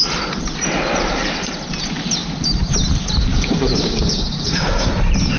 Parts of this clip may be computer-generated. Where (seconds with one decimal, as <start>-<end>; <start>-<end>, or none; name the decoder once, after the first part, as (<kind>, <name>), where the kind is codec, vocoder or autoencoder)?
3.3-4.9 (codec, DAC)